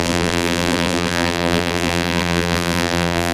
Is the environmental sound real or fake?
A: fake